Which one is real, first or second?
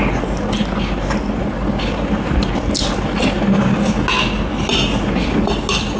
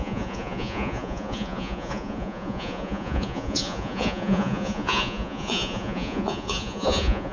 first